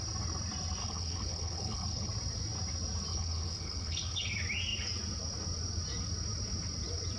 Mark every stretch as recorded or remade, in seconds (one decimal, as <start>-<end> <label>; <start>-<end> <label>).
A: 0.0-0.8 recorded; 0.8-2.1 remade; 2.1-3.1 recorded; 3.1-4.3 remade; 4.3-7.2 recorded